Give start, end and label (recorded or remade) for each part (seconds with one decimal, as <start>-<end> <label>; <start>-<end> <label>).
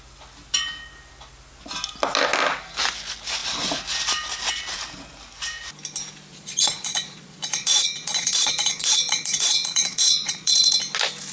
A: 0.0-6.3 recorded; 6.3-10.8 remade; 10.8-11.3 recorded